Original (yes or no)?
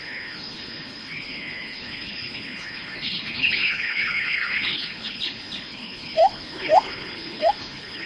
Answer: no